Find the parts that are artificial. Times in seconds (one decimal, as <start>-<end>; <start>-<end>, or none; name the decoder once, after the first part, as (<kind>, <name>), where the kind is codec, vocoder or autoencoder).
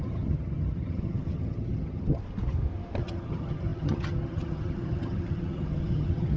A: 0.0-2.2 (vocoder, HiFi-GAN); 3.0-6.4